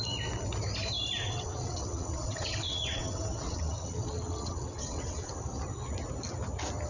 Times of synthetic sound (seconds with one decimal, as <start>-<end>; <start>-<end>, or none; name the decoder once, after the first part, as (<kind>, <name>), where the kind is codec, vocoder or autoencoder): 1.2-5.3 (vocoder, WaveNeXt)